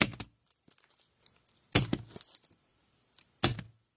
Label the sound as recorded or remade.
recorded